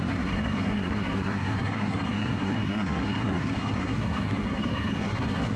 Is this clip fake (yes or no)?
yes